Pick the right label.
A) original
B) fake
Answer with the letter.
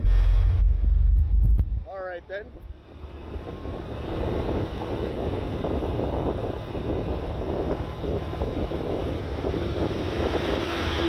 A